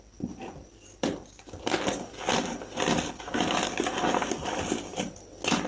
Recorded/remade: recorded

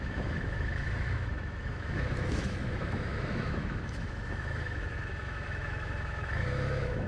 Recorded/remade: remade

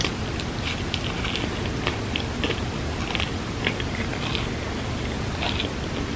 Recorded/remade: recorded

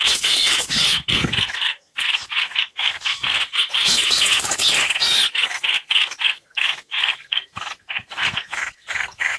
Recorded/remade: remade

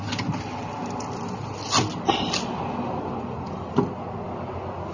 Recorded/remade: recorded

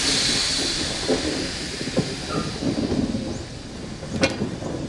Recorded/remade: recorded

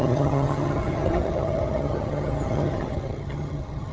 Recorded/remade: remade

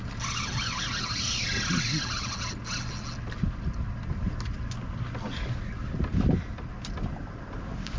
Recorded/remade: recorded